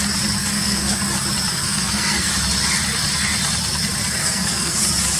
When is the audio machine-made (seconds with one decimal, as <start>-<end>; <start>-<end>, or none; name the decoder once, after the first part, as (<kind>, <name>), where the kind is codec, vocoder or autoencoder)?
0.4-1.0 (codec, SNAC); 1.5-2.3; 4.2-4.8